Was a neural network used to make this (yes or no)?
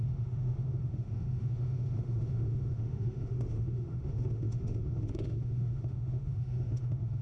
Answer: yes